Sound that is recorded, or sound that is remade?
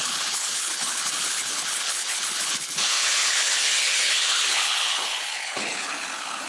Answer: remade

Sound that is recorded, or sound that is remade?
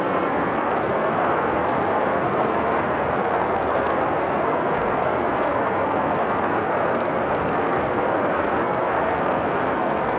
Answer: remade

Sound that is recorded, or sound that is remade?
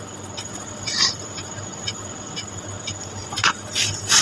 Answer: recorded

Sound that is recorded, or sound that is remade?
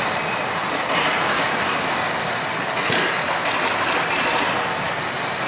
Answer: recorded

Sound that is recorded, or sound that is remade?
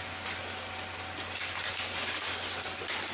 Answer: recorded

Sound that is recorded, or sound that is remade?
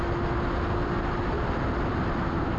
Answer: recorded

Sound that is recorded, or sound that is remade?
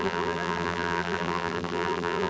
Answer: remade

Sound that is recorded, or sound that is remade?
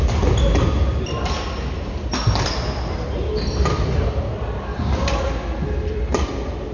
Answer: recorded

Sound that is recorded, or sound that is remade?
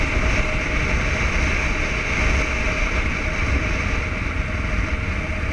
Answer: recorded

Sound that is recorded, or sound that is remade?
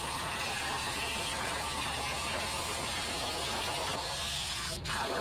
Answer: recorded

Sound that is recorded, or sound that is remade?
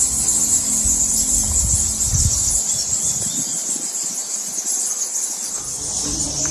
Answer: recorded